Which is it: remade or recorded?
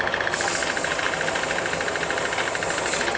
recorded